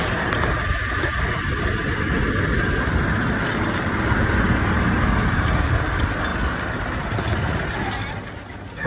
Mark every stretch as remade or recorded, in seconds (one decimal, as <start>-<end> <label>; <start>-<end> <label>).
0.0-8.9 recorded